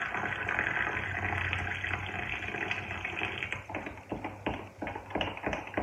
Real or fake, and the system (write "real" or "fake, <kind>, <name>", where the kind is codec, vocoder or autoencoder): real